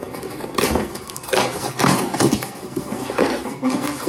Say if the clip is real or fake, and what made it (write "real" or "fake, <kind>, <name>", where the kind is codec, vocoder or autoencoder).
fake, codec, SNAC